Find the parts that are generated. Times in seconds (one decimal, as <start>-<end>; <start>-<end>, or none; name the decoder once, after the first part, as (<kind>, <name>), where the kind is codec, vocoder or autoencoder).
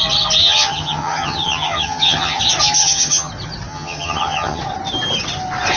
0.4-2.4 (vocoder, HiFi-GAN); 2.8-3.3; 3.7-4.6